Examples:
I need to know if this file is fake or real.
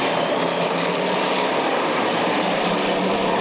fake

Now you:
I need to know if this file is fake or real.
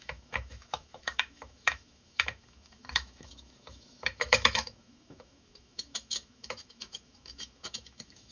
fake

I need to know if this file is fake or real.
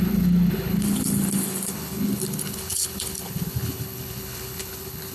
fake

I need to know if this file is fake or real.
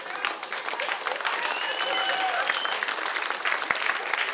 real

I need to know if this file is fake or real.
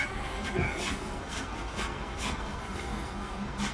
fake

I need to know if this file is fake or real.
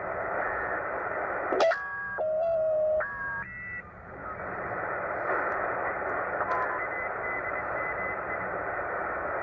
real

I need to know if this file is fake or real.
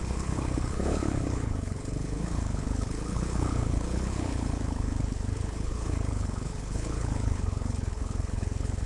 fake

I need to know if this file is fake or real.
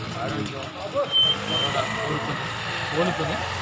real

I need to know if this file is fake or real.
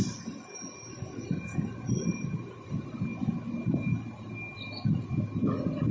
real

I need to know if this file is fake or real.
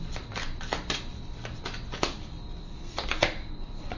real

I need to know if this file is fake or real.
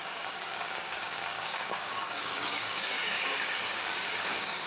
fake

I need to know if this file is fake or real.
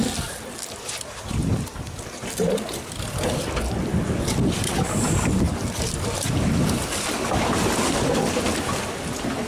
real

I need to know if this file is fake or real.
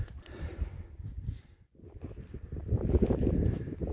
real